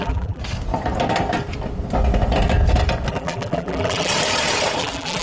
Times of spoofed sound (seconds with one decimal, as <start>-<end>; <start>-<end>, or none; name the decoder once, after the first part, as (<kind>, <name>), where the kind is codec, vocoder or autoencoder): 0.0-0.4 (vocoder, BigVGAN v2); 3.1-4.1; 4.8-5.2